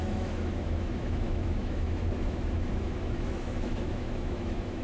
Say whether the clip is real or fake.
fake